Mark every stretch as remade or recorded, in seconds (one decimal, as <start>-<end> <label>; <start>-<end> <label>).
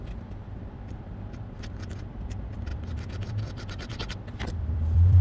0.0-5.2 remade